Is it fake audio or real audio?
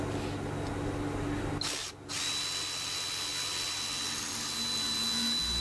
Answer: real